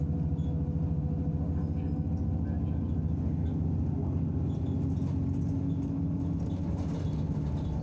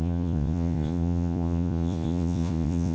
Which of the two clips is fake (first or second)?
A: second